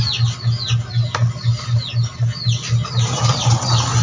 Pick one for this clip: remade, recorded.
recorded